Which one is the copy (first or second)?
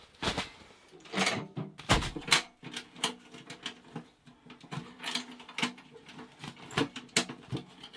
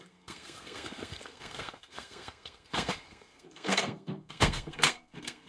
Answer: second